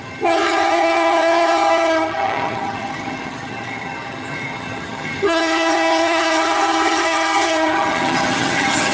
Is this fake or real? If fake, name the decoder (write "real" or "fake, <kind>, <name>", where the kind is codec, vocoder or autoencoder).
fake, vocoder, HiFi-GAN